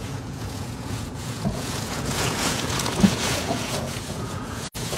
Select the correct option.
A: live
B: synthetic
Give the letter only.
B